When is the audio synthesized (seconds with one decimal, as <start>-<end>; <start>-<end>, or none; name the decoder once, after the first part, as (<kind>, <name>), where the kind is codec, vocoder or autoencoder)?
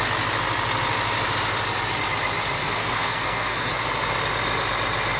2.6-3.7 (codec, SNAC)